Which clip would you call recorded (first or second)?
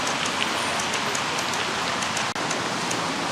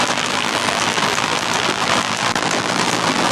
first